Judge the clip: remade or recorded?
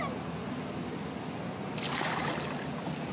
recorded